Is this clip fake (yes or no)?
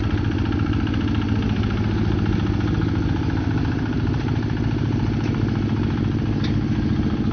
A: no